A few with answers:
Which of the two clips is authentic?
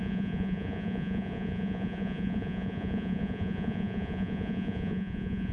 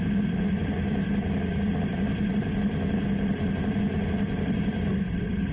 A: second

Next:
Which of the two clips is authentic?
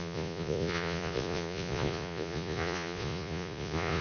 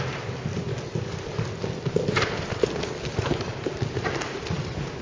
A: second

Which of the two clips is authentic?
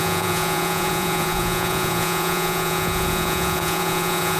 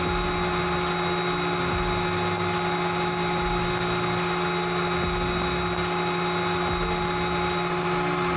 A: second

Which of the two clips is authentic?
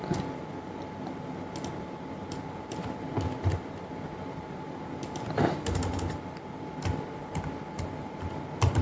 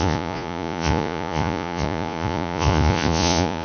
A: first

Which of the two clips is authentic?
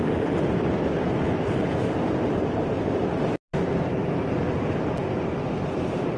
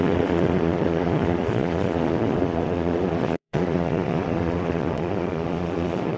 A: first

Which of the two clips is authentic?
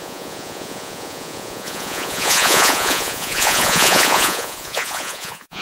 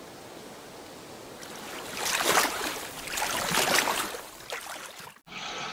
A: second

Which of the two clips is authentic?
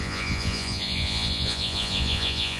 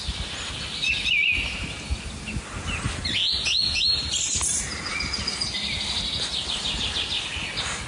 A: second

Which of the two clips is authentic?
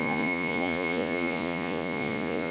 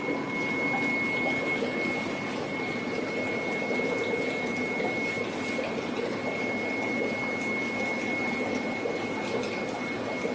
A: second